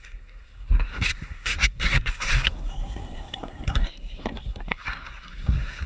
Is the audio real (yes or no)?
no